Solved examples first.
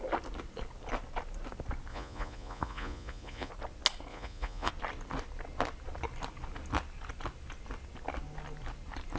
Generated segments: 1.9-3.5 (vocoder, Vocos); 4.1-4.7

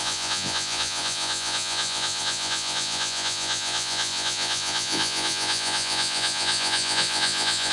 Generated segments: 0.0-7.7 (vocoder, Vocos)

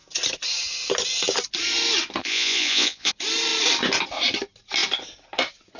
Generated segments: 2.2-3.1 (vocoder, Vocos)

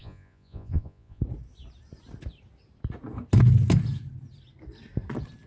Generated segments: 0.0-1.2 (vocoder, Vocos)

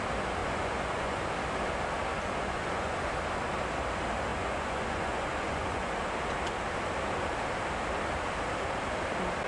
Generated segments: 0.4-1.2 (vocoder, Vocos); 2.1-3.1; 4.3-5.9

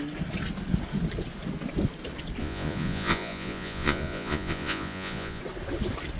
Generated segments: 2.4-5.4 (vocoder, Vocos)

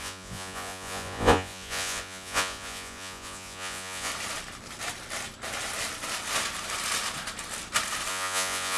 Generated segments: 0.0-4.1 (vocoder, Vocos); 8.1-8.8